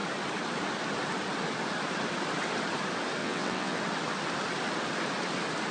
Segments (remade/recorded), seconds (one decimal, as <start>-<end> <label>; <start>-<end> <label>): 0.0-3.2 recorded; 3.2-3.8 remade; 3.8-5.7 recorded